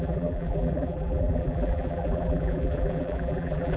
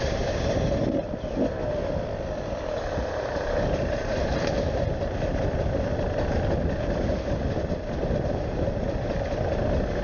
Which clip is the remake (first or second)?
first